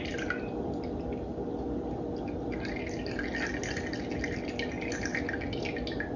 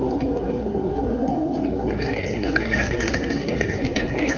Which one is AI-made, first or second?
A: second